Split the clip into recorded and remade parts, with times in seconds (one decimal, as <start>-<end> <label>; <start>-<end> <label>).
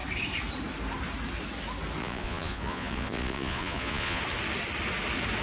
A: 0.0-2.0 recorded; 2.0-4.2 remade; 4.2-5.4 recorded